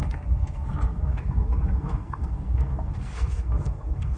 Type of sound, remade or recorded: remade